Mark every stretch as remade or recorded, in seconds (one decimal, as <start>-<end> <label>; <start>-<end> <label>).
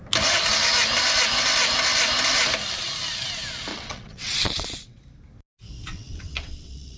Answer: 0.0-3.7 recorded; 3.7-5.0 remade; 5.0-5.9 recorded; 5.9-7.0 remade